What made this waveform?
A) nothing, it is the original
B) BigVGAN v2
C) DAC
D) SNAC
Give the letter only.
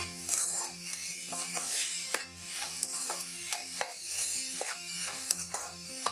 C